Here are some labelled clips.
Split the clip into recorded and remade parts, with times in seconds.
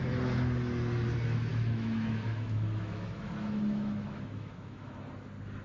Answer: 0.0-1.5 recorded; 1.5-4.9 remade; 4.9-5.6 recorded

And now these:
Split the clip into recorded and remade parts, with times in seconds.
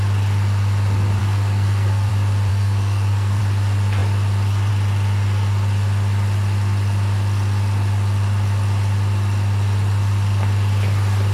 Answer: 0.0-1.2 recorded; 1.2-2.1 remade; 2.1-2.5 recorded; 2.5-3.4 remade; 3.4-11.3 recorded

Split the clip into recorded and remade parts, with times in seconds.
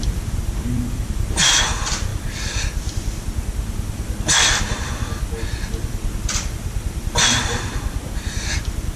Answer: 0.0-9.0 remade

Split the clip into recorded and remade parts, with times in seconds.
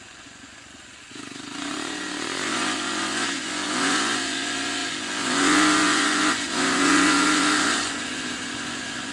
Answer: 0.0-9.1 remade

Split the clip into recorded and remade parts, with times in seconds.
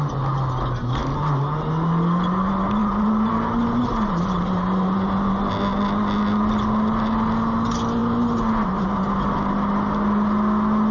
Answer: 0.0-2.8 recorded; 2.8-5.3 remade; 5.3-10.9 recorded